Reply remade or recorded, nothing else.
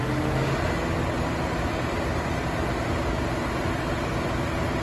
recorded